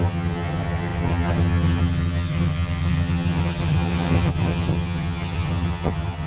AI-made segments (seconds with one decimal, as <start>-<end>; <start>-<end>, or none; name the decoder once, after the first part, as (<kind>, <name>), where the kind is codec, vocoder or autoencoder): 0.0-6.3 (vocoder, HiFi-GAN)